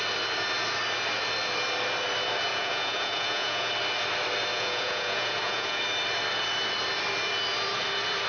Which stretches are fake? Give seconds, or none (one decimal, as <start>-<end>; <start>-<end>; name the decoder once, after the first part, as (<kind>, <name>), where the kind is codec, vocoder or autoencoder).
2.5-3.7 (vocoder, Vocos); 4.5-5.8